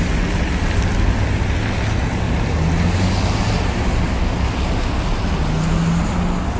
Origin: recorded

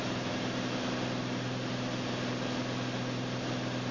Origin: recorded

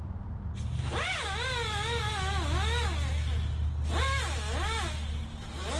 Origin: recorded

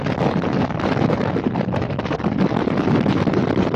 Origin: recorded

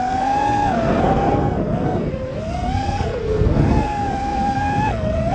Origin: remade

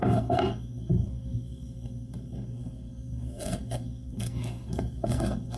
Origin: remade